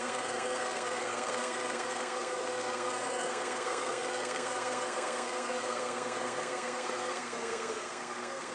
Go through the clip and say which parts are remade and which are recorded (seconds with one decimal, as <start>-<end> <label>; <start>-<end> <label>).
0.0-8.5 remade